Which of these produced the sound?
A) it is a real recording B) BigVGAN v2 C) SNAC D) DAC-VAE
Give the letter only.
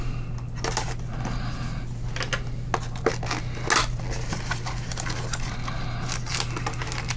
A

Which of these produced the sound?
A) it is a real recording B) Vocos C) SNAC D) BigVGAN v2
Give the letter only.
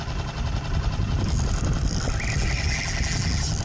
A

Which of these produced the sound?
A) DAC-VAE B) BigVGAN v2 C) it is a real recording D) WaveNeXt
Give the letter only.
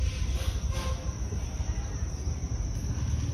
C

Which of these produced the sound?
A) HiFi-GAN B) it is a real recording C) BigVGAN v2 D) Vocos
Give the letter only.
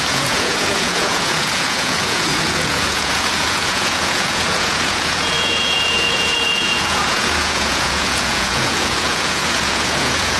D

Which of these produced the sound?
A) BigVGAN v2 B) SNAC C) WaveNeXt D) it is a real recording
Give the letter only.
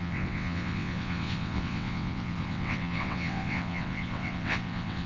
C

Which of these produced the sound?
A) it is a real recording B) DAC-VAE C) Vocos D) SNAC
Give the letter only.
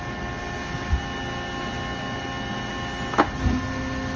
A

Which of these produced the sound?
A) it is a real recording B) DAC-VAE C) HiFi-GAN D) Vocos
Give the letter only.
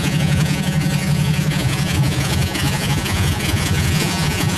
D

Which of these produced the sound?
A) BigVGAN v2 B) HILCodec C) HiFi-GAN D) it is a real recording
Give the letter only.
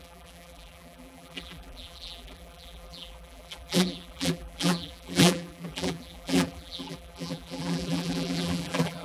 A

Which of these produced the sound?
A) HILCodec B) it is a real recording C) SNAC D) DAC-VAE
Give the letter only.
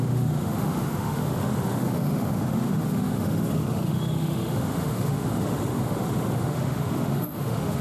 D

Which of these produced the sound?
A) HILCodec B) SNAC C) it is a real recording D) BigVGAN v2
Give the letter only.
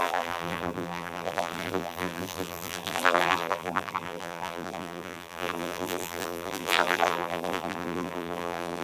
D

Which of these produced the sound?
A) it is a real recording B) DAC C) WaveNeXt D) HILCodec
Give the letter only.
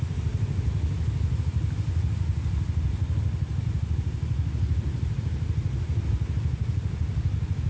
A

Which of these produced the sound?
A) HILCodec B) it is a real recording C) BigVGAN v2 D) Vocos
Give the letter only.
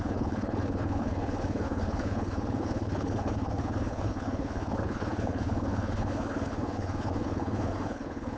A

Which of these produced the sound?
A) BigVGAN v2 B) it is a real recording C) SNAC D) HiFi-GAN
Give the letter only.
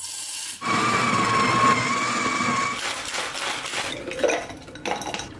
B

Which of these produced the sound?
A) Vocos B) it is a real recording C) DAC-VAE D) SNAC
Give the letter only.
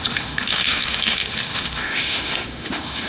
C